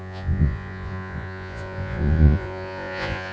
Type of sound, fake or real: fake